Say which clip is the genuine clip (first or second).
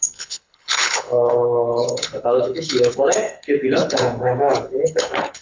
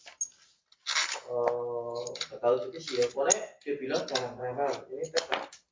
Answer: second